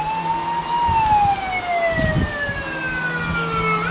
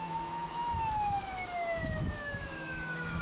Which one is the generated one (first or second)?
second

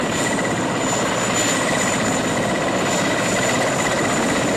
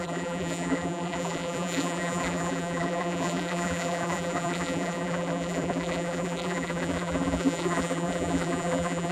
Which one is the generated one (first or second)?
second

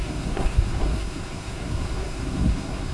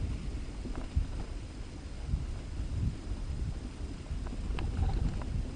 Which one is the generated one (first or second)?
first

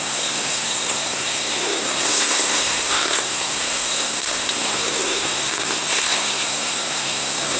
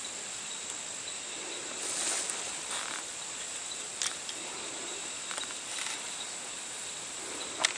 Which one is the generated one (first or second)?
first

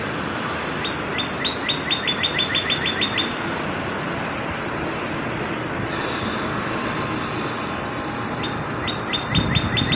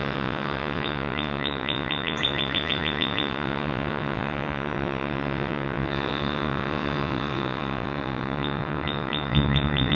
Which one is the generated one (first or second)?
second